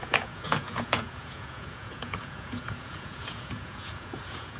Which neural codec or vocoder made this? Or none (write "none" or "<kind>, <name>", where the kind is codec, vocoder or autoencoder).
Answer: vocoder, Vocos